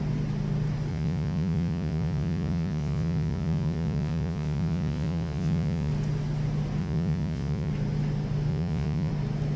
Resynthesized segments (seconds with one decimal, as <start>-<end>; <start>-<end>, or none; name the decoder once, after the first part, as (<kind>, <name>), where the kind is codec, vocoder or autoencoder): 0.9-5.9 (vocoder, Vocos); 6.8-7.7; 8.5-9.1

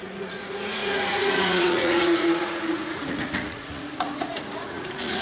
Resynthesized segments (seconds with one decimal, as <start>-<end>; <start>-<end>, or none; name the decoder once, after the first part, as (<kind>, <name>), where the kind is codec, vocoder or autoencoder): 0.0-5.2 (vocoder, Vocos)

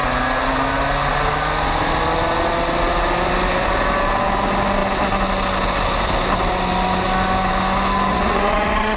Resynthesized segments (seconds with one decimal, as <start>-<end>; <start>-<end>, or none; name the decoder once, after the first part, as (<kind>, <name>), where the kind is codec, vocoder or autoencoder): 8.1-9.0 (vocoder, Vocos)

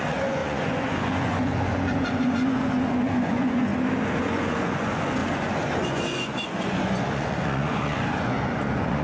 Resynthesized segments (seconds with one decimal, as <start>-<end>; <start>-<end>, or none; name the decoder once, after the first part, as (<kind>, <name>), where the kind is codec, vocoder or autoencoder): 0.0-3.7 (vocoder, Vocos); 4.2-9.0

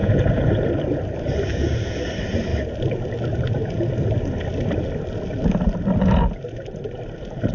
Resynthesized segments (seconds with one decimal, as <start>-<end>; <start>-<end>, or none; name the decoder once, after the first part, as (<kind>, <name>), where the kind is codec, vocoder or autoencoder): 0.0-0.7 (vocoder, Vocos); 1.5-2.1

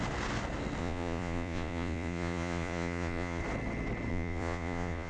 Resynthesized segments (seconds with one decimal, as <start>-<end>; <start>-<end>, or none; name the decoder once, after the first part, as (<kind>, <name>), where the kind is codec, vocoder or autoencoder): 0.8-3.4 (vocoder, Vocos); 4.1-5.1

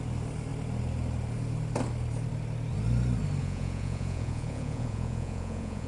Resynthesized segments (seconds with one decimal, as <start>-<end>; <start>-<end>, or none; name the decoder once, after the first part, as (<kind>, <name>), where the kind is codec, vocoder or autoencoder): 3.4-5.9 (vocoder, Vocos)

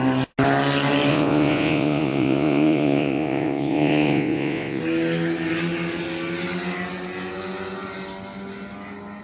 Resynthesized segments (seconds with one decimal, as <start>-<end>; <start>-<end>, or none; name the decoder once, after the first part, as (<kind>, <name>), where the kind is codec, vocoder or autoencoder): 1.1-4.8 (vocoder, Vocos)